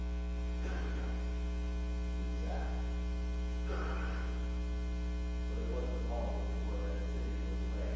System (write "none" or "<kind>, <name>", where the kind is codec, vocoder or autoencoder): none